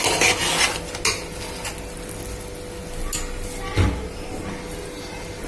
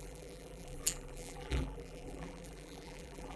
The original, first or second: first